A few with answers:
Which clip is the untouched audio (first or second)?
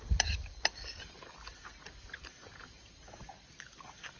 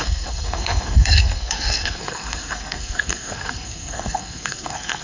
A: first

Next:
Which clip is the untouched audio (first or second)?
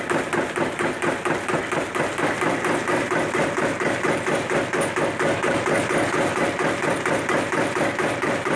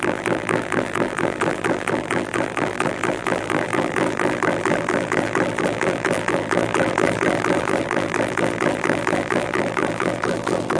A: first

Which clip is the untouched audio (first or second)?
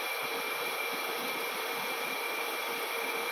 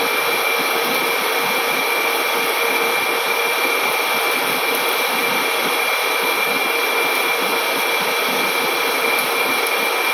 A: second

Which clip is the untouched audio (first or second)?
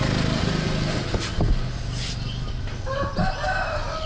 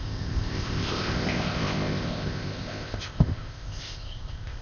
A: first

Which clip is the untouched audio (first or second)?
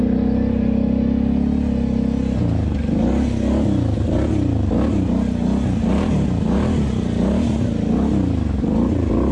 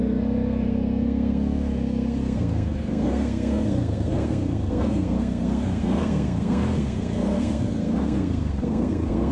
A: first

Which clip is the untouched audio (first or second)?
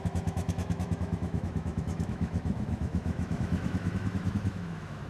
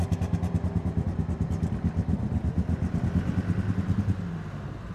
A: second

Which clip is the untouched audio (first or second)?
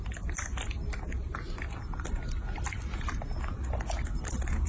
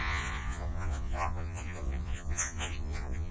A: first